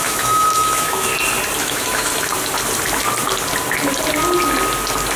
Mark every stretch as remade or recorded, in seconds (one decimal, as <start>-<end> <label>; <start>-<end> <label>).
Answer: 0.0-1.1 remade; 1.1-1.6 recorded; 1.6-2.1 remade; 2.1-5.2 recorded